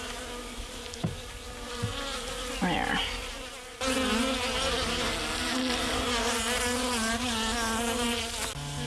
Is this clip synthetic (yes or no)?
no